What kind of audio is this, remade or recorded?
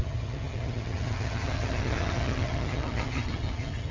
remade